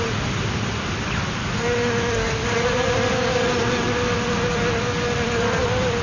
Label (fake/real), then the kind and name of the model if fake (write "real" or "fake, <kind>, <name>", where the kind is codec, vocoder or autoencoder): real